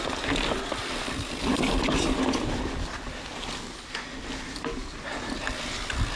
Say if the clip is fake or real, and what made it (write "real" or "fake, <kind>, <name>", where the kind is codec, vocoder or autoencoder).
real